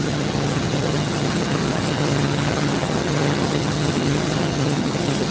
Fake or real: fake